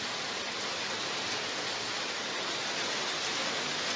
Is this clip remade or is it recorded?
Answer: recorded